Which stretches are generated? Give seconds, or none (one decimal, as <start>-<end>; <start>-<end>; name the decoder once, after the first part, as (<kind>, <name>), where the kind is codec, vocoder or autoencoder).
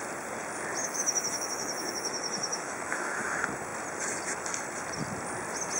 0.8-3.3 (autoencoder, DAC-VAE)